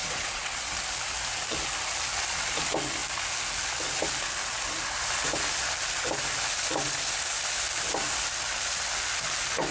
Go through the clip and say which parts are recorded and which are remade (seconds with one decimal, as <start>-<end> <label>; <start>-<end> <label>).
0.0-0.5 remade; 0.5-9.7 recorded

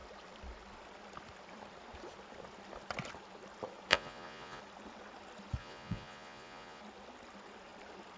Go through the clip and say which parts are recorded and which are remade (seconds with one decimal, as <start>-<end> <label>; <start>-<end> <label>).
0.0-3.9 recorded; 3.9-4.6 remade; 4.6-5.6 recorded; 5.6-6.8 remade; 6.8-8.2 recorded

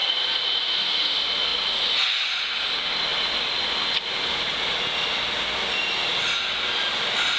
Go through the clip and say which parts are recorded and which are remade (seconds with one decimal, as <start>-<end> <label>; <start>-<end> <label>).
0.0-7.4 recorded